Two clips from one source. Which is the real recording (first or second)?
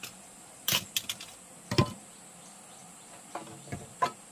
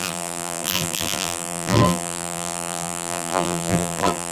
first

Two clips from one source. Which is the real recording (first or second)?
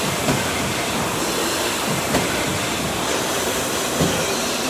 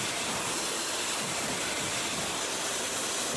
first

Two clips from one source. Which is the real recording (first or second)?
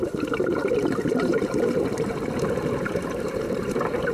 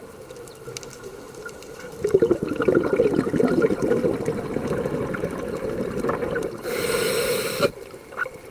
second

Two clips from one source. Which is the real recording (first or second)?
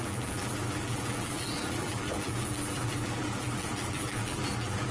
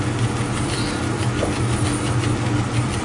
second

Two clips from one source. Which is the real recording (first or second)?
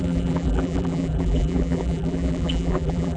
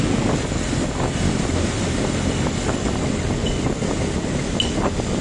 second